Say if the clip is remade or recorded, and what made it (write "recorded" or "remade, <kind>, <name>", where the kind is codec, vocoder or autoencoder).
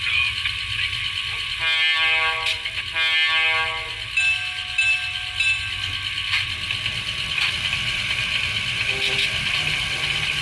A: recorded